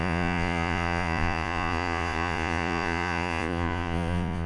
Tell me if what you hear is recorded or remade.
remade